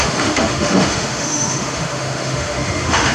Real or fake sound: fake